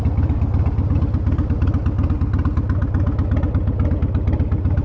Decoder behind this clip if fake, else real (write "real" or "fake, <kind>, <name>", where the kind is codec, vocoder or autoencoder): real